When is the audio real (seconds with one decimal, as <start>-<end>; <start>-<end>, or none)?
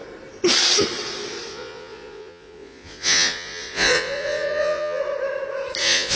0.0-1.5; 5.0-5.8